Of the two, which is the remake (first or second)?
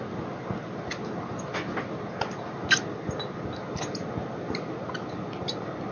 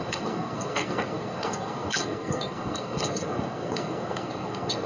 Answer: second